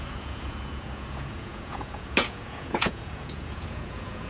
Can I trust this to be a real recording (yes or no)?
no